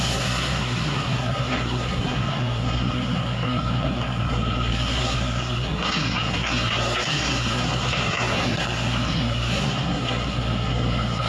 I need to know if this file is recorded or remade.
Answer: remade